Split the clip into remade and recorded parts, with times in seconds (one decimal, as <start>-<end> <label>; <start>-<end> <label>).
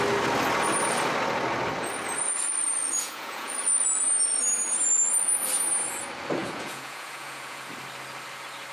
0.0-2.8 recorded; 2.8-3.5 remade; 3.5-6.4 recorded; 6.4-7.7 remade; 7.7-8.7 recorded